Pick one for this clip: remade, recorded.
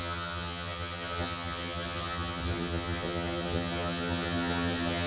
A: remade